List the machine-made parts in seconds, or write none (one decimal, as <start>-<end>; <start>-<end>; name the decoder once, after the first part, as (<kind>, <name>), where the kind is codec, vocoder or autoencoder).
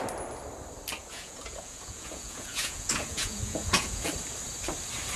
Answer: 1.0-4.1 (vocoder, Vocos)